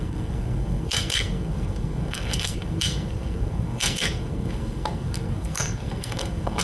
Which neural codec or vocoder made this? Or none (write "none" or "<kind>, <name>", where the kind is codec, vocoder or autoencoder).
codec, SNAC